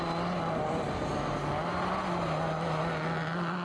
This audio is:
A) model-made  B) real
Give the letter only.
B